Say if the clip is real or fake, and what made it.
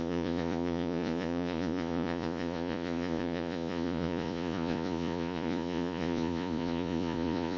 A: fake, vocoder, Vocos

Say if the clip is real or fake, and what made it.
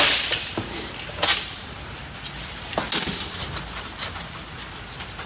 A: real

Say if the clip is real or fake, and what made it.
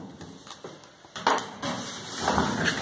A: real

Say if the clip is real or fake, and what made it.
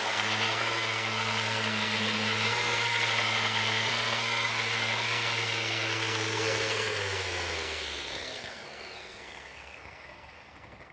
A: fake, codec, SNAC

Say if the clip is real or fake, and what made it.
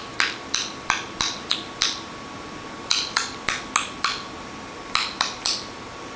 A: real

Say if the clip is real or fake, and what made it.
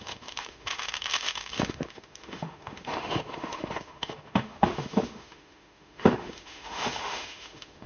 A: fake, autoencoder, DAC-VAE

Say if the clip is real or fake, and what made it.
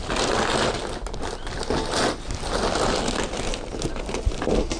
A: real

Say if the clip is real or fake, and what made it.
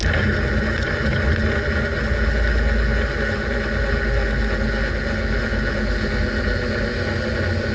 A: real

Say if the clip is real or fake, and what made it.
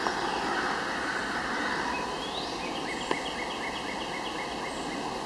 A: real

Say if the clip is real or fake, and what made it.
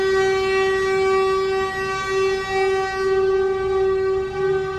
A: real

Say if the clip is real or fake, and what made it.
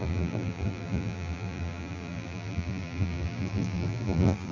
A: fake, vocoder, BigVGAN v2